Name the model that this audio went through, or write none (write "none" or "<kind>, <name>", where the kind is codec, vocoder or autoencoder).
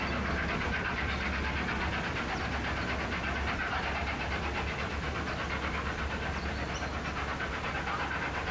none